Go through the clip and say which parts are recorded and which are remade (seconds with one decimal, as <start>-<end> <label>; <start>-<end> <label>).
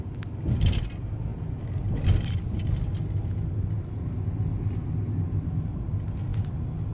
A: 0.0-6.9 recorded